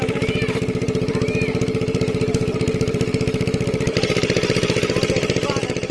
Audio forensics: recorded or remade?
remade